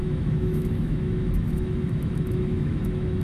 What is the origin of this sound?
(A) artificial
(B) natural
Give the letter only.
A